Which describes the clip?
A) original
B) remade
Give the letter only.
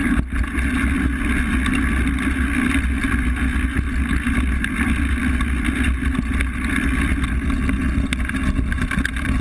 A